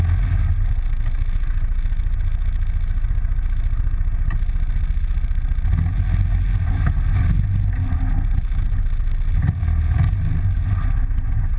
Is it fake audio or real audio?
real